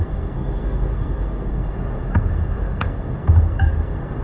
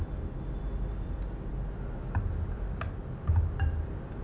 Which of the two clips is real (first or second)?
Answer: second